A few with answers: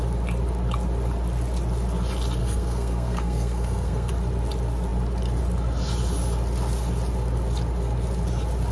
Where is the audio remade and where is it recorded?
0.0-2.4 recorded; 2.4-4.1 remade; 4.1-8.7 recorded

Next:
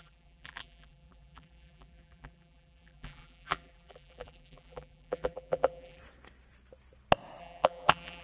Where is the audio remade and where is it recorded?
0.0-6.0 remade; 6.0-7.4 recorded; 7.4-8.2 remade